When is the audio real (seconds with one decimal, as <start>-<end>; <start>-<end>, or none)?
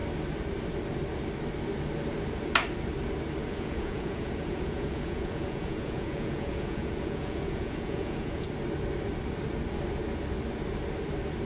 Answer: 0.0-3.4; 8.5-11.5